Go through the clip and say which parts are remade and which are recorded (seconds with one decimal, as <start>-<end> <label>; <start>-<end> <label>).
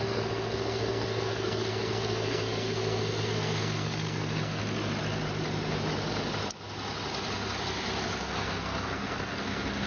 0.0-4.6 remade; 4.6-8.2 recorded; 8.2-9.9 remade